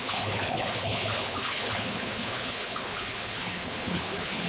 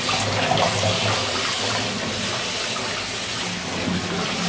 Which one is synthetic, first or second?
first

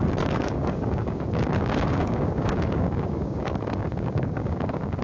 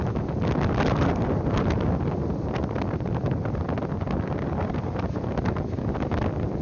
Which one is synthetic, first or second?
first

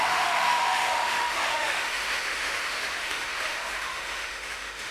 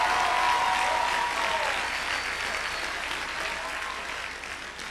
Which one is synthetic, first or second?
first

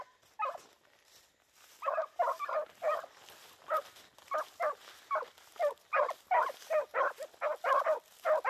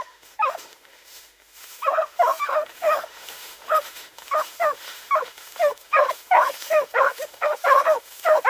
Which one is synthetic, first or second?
second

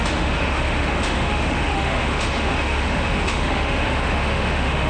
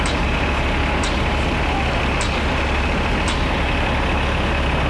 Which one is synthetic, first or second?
first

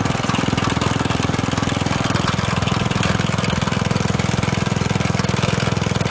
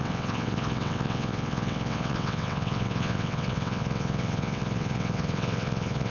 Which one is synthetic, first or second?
second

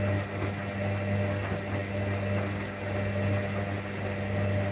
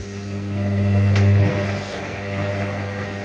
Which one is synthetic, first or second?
second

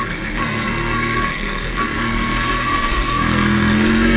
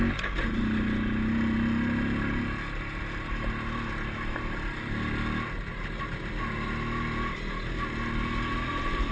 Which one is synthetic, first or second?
first